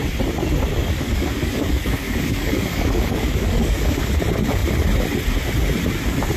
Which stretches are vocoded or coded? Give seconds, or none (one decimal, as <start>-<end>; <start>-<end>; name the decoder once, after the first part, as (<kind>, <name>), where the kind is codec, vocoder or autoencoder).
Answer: 0.8-4.1 (codec, DAC)